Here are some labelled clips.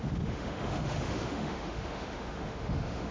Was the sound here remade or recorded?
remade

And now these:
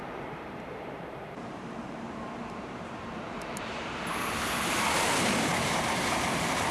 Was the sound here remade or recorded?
remade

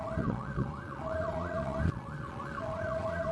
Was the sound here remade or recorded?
remade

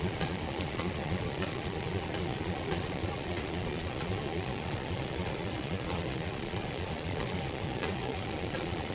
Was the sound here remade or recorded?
remade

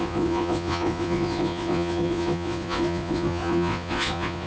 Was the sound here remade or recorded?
remade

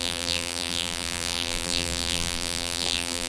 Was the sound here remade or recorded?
remade